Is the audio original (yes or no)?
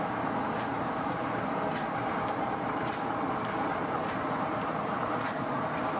no